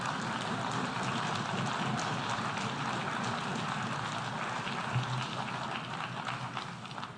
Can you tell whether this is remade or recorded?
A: recorded